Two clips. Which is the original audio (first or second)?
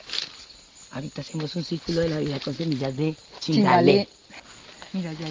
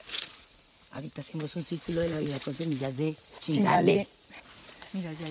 first